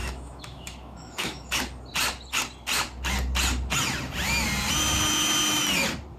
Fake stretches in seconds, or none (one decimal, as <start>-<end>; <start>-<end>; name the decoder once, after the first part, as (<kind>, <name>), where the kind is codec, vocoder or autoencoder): 0.0-1.6 (autoencoder, DAC-VAE)

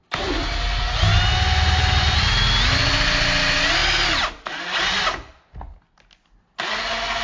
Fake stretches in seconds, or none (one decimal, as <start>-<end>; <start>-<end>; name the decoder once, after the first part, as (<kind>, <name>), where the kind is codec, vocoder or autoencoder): none

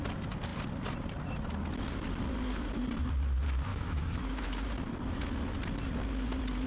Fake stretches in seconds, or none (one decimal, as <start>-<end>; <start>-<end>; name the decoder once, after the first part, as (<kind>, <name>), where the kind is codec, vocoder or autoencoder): 3.7-4.5 (autoencoder, DAC-VAE)

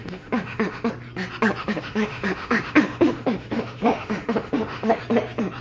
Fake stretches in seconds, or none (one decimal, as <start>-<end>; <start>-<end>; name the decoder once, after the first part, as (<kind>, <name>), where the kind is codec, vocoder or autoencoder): 0.0-0.9 (autoencoder, DAC-VAE); 1.6-5.0

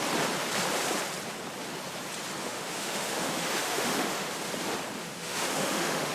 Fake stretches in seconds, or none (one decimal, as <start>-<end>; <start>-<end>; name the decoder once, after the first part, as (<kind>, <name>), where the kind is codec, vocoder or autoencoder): 2.4-4.3 (autoencoder, DAC-VAE); 5.0-6.1

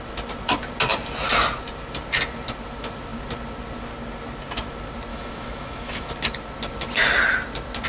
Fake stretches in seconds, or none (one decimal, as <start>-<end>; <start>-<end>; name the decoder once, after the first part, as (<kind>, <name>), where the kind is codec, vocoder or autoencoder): 5.1-6.1 (autoencoder, DAC-VAE)